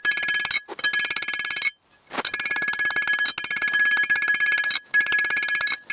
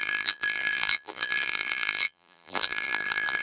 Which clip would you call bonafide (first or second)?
first